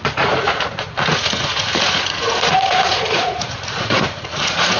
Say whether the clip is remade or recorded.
remade